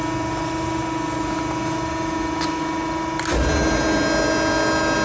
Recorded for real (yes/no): yes